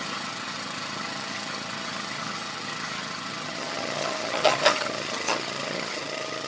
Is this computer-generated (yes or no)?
yes